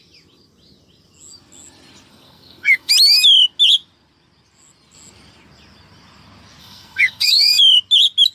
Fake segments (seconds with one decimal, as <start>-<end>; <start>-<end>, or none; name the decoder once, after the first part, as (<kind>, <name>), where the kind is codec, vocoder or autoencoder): 2.1-2.9 (codec, SNAC); 6.6-7.6